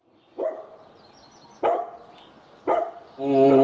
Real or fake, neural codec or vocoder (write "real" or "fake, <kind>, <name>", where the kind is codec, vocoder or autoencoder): real